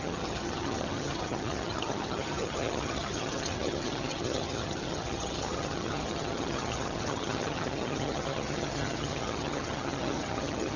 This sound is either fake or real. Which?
fake